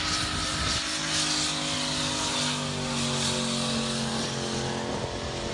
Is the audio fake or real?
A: real